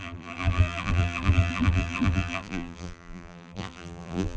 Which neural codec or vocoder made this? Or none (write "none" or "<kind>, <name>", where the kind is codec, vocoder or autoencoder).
vocoder, BigVGAN v2